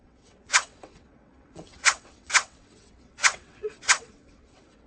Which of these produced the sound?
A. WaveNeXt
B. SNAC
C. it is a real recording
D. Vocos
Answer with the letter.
A